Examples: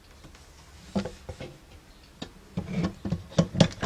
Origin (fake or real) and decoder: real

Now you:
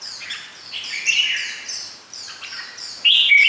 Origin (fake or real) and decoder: fake, vocoder, BigVGAN v2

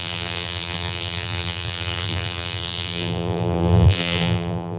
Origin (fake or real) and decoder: fake, vocoder, BigVGAN v2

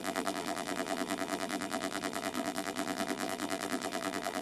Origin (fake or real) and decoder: fake, vocoder, BigVGAN v2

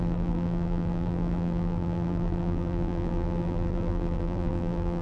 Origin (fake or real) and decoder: fake, vocoder, BigVGAN v2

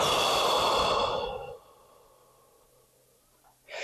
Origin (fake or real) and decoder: real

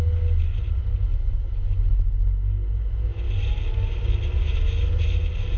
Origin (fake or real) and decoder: real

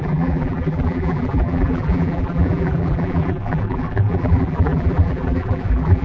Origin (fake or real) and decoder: fake, vocoder, BigVGAN v2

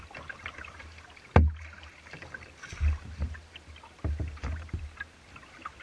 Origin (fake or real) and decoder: real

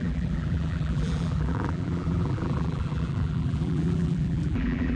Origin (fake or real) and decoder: fake, vocoder, BigVGAN v2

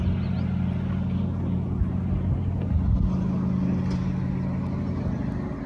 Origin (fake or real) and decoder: real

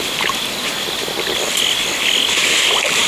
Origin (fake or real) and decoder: real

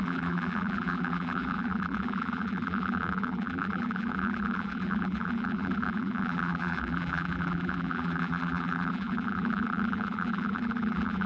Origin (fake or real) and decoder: fake, vocoder, BigVGAN v2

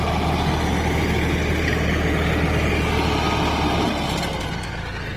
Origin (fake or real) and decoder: real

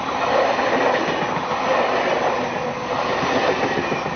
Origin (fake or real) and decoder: real